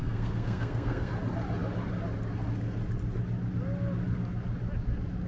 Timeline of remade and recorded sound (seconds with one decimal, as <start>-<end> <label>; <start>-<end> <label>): 0.0-1.1 remade; 1.1-5.3 recorded